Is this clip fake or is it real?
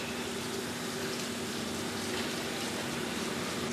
real